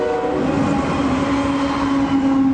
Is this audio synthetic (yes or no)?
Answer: no